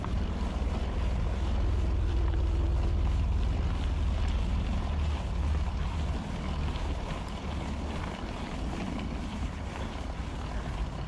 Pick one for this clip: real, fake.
real